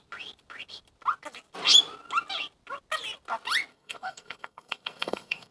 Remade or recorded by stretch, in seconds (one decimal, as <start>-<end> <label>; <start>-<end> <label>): 0.0-3.7 recorded; 3.7-5.5 remade